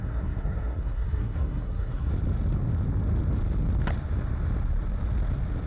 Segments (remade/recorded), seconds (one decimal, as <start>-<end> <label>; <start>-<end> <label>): 0.0-2.1 remade; 2.1-5.7 recorded